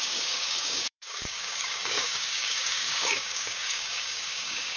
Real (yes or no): no